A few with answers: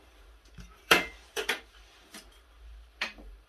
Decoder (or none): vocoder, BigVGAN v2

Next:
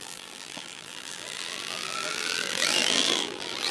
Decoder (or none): vocoder, BigVGAN v2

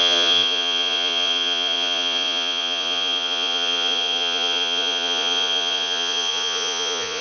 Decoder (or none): vocoder, Vocos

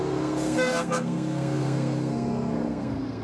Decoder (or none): codec, SNAC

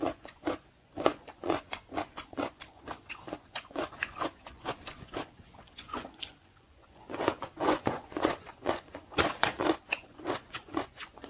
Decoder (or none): vocoder, Vocos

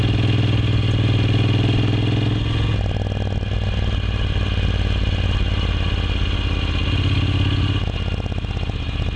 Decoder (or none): none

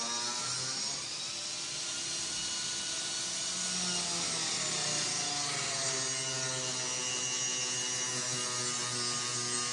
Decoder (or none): none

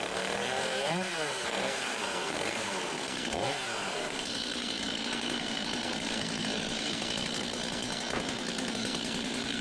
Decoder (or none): codec, SNAC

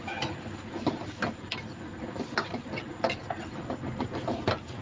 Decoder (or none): none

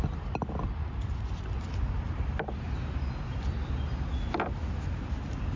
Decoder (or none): none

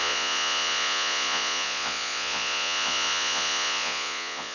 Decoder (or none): vocoder, Vocos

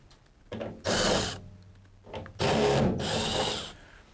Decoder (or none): none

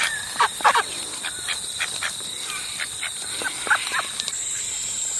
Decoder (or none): vocoder, BigVGAN v2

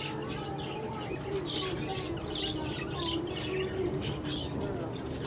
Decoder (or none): none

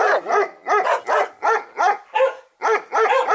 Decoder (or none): none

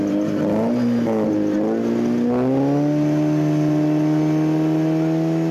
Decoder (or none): none